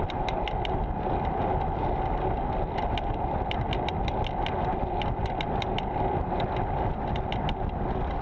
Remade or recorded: recorded